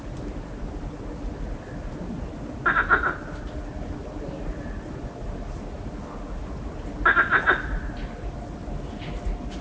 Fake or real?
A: real